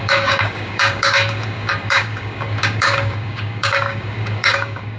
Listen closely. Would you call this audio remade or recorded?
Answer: remade